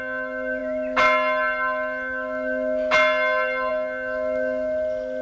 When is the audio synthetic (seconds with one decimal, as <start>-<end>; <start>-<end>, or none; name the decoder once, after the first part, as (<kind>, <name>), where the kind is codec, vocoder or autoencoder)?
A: none